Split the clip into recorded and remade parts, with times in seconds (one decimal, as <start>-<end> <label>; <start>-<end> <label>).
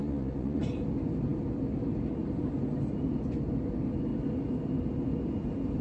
0.0-0.6 remade; 0.6-5.8 recorded